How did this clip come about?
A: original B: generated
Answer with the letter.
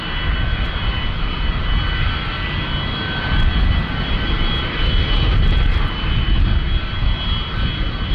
A